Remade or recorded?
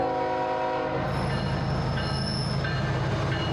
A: recorded